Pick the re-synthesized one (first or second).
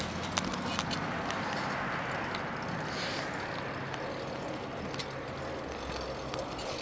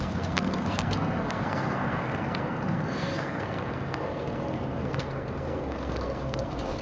second